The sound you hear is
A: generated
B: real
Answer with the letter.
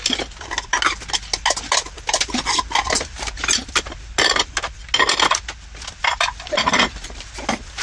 B